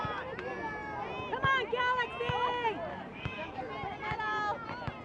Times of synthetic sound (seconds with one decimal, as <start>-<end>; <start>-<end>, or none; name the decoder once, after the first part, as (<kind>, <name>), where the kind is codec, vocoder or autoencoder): 2.9-3.6 (codec, DAC)